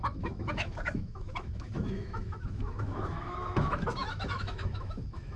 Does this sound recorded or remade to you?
remade